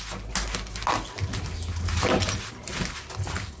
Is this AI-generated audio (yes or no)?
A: no